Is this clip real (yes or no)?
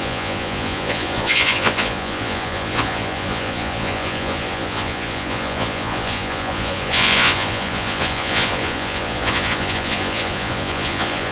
no